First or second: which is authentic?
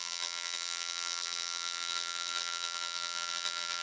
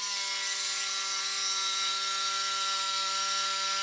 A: second